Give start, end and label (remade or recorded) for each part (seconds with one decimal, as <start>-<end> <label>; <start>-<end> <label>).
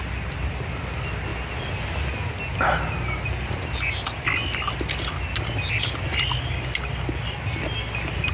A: 0.0-8.3 recorded